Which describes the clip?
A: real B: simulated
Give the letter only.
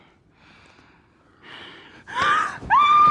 A